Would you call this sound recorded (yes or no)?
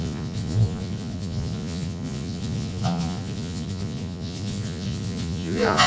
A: no